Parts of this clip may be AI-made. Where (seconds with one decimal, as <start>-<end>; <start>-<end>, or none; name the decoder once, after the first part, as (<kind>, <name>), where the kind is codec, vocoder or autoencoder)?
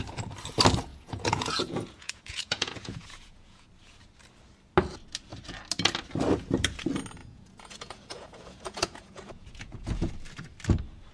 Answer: 0.9-3.7 (vocoder, Vocos); 7.2-10.1